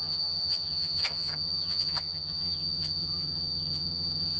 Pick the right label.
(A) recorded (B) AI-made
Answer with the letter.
B